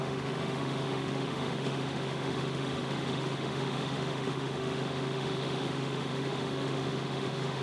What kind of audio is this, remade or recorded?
remade